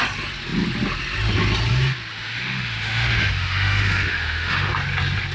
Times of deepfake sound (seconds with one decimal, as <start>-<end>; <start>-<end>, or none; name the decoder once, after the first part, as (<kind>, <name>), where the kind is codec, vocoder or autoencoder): 2.1-4.7 (autoencoder, DAC-VAE)